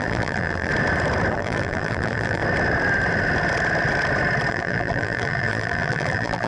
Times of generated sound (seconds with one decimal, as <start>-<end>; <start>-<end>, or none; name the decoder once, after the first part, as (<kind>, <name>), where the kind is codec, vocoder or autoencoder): 0.0-0.7 (vocoder, BigVGAN v2); 1.3-2.4; 4.5-6.5